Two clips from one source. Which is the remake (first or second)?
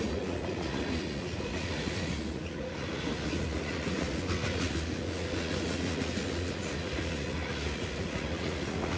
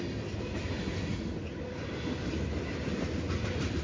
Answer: first